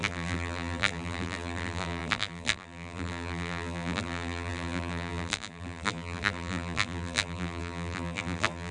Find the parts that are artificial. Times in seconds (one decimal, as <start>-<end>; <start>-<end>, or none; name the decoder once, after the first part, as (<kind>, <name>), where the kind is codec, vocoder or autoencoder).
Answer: 0.0-8.7 (vocoder, BigVGAN v2)